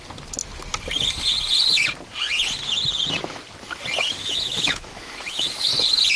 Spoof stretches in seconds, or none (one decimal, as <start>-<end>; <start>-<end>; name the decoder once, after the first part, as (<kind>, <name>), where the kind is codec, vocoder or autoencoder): 4.1-5.7 (autoencoder, DAC-VAE)